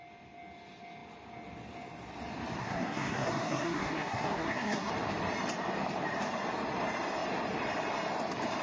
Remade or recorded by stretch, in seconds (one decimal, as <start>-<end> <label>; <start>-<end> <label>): 0.0-2.6 recorded; 2.6-4.9 remade; 4.9-8.6 recorded